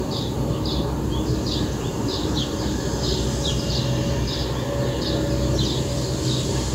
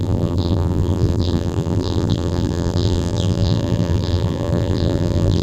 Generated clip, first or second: second